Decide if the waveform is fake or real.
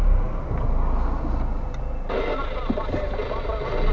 real